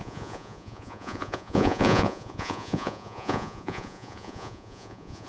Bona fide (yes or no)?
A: no